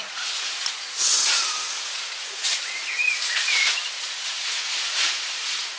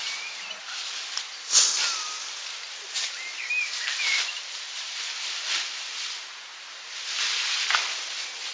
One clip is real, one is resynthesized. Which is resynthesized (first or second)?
first